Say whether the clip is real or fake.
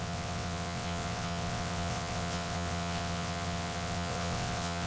fake